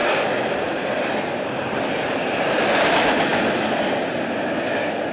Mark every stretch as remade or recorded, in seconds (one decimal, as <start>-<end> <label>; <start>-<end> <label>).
0.0-5.1 recorded